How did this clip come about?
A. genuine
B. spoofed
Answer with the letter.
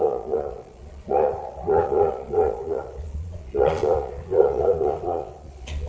B